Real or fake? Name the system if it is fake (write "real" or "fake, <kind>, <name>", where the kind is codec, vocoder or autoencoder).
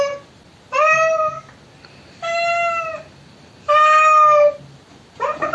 real